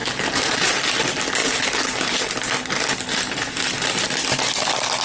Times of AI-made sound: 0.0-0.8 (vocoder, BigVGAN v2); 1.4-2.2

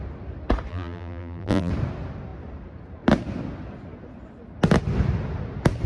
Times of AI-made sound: 0.7-1.7 (vocoder, BigVGAN v2)

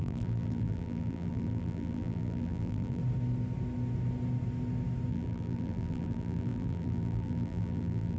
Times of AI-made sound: 0.0-3.0 (vocoder, BigVGAN v2); 5.1-8.2

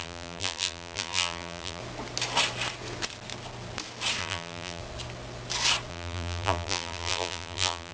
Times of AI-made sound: 0.0-1.8 (vocoder, BigVGAN v2); 4.2-4.8; 5.9-7.9

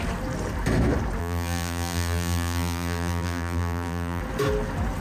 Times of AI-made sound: 1.2-4.2 (vocoder, BigVGAN v2)

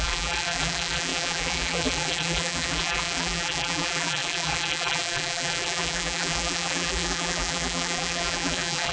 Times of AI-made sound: 0.0-8.9 (vocoder, BigVGAN v2)

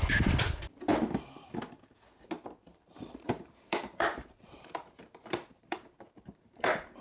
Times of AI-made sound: 2.7-7.0 (vocoder, BigVGAN v2)

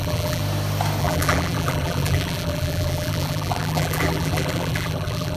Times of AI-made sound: 0.0-0.4 (vocoder, BigVGAN v2); 1.0-5.4